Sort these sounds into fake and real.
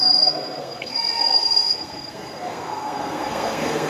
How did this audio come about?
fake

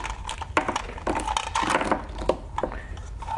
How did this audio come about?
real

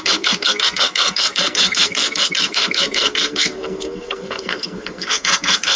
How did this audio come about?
fake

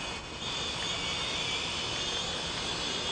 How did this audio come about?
real